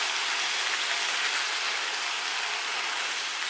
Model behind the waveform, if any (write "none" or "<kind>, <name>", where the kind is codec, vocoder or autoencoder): none